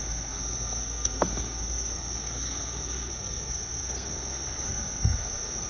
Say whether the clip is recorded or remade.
remade